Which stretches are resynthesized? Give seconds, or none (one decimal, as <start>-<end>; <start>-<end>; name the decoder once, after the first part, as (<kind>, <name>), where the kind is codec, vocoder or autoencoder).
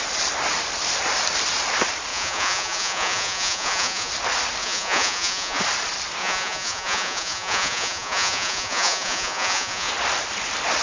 2.1-4.1 (vocoder, Vocos); 4.6-5.6; 6.2-9.9